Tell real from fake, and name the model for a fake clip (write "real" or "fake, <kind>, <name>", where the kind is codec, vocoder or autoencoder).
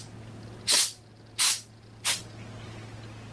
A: real